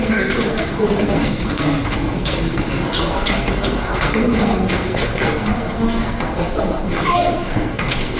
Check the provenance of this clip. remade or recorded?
remade